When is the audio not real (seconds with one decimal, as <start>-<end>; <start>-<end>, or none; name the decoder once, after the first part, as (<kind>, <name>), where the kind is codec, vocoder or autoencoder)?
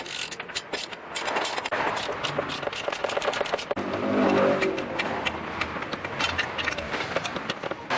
3.0-5.1 (vocoder, BigVGAN v2)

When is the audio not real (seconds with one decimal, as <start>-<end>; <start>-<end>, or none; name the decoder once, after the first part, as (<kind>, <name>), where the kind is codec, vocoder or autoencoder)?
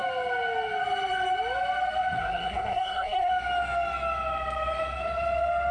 2.2-3.3 (codec, SNAC)